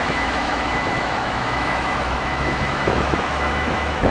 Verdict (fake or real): fake